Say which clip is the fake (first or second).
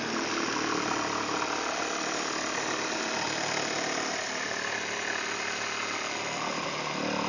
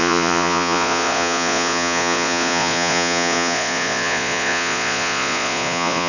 second